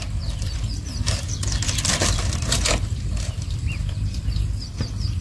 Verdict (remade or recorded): remade